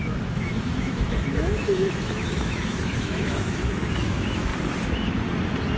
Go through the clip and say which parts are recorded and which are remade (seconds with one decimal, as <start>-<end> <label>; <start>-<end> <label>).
0.0-4.5 remade; 4.5-5.8 recorded